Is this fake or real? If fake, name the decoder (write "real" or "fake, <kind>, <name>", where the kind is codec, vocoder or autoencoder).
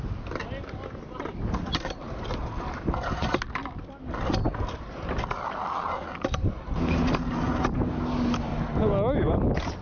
real